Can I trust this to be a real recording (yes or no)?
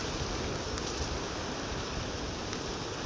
yes